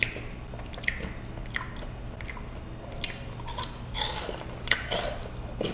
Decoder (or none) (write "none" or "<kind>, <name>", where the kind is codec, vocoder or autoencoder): none